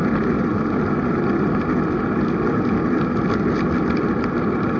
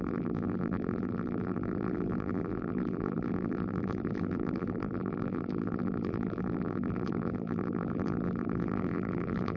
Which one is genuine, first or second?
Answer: first